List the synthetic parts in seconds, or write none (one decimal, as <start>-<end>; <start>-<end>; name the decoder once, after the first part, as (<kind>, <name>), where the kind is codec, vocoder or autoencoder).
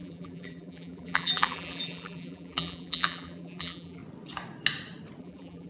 0.0-4.0 (vocoder, BigVGAN v2); 5.2-5.7